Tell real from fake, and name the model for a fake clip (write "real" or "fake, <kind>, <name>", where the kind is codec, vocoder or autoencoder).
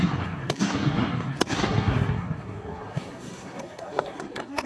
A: fake, codec, SNAC